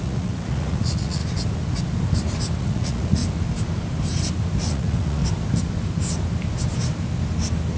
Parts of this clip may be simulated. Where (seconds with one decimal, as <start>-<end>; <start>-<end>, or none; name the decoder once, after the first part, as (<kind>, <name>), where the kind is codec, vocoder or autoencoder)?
0.0-1.2 (vocoder, Vocos); 2.6-3.2; 4.7-5.2